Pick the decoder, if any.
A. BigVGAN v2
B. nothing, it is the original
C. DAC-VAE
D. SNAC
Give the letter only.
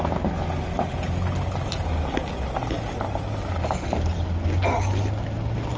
B